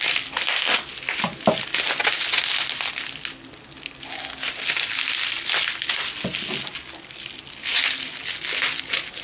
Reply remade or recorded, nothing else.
recorded